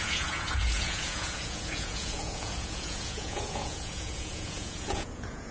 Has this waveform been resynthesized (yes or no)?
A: yes